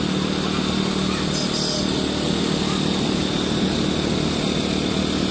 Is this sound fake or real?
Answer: real